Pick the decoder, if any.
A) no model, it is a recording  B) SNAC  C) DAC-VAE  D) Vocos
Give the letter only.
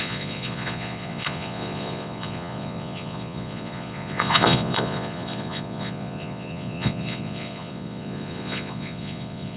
D